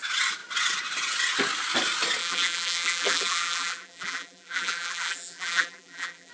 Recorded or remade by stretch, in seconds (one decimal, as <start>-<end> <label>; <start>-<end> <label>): 0.0-2.2 recorded; 2.2-6.3 remade